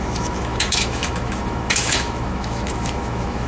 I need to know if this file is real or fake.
fake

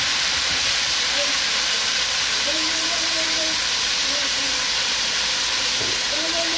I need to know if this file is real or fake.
fake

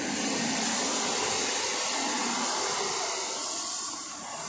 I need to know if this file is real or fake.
real